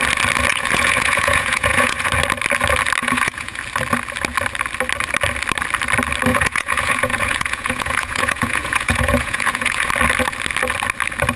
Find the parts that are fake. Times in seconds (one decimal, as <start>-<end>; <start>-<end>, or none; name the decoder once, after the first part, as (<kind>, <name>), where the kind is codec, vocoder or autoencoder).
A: 0.5-2.1 (vocoder, Vocos); 3.0-3.6; 6.3-9.9